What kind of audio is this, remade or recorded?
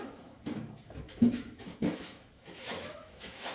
remade